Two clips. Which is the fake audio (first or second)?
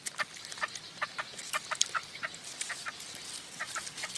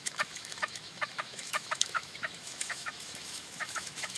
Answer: second